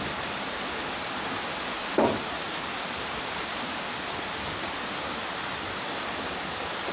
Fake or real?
real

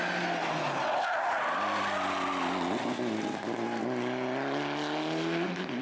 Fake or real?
real